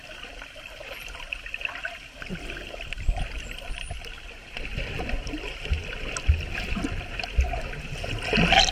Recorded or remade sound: recorded